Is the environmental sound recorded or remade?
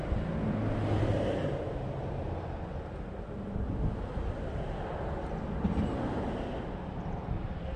recorded